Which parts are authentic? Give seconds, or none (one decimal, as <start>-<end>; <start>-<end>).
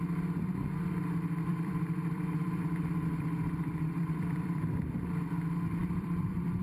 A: 0.0-1.5; 5.3-5.8